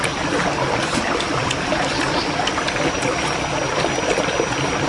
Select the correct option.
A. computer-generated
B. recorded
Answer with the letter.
B